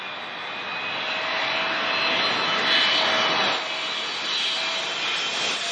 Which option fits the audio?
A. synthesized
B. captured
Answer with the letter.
B